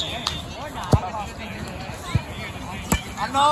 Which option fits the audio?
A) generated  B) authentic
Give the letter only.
B